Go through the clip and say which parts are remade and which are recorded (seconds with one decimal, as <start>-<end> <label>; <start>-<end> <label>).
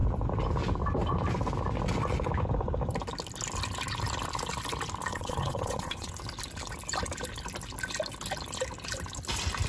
0.0-5.1 recorded; 5.1-6.1 remade; 6.1-9.7 recorded